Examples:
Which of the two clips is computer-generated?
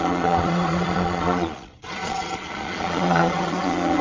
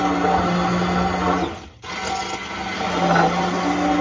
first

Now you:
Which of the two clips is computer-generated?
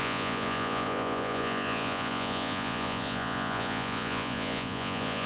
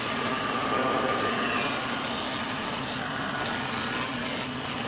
first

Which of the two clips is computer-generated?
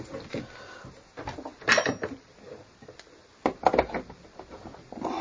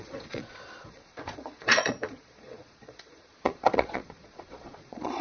second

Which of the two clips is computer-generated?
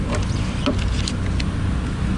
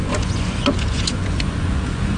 second